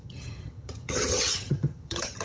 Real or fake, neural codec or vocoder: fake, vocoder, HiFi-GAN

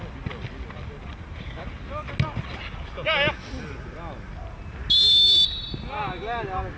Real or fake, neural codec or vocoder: real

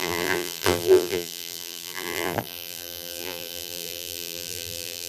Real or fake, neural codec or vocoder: fake, vocoder, BigVGAN v2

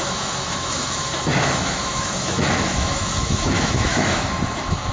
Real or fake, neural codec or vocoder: fake, autoencoder, DAC-VAE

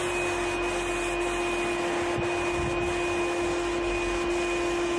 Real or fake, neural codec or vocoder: real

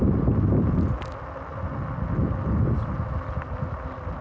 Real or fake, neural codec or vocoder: real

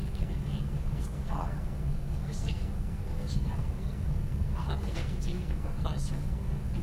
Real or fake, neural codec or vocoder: fake, codec, SNAC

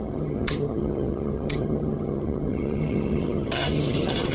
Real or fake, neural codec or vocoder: fake, vocoder, HiFi-GAN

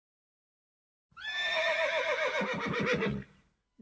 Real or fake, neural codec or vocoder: real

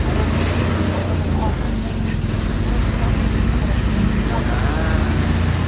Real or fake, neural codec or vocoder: real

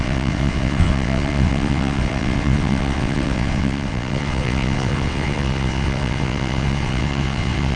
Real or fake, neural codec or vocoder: fake, vocoder, WaveNeXt